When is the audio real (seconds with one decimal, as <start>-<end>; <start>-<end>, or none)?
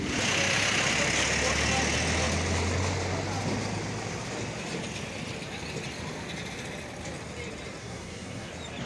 0.0-7.8; 8.5-8.9